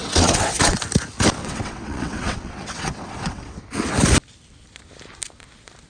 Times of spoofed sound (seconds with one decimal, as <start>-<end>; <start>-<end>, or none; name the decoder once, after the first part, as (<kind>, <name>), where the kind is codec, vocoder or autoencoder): 0.0-0.8 (vocoder, WaveNeXt); 1.4-3.6